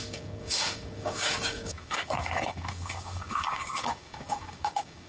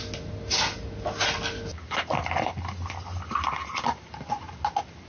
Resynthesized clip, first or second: first